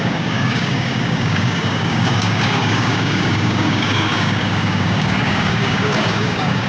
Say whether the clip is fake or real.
fake